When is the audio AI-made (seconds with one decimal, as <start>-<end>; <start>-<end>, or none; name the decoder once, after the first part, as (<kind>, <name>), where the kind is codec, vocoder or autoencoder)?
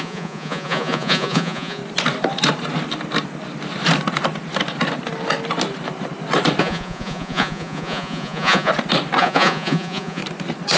0.0-1.8 (vocoder, Vocos); 6.6-8.7; 9.2-10.2